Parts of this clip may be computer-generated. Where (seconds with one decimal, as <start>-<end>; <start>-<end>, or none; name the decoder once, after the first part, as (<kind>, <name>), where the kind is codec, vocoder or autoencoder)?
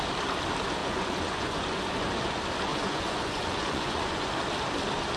0.8-2.3 (vocoder, Vocos); 2.7-4.3